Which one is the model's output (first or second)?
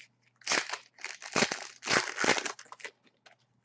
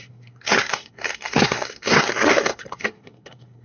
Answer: second